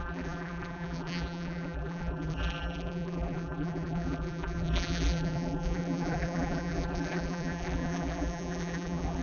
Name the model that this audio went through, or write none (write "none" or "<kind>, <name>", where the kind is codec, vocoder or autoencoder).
vocoder, BigVGAN v2